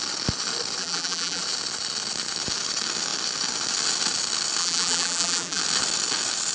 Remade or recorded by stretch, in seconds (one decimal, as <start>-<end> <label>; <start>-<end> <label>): 0.0-0.8 recorded; 0.8-1.4 remade; 1.4-4.6 recorded; 4.6-5.6 remade; 5.6-6.5 recorded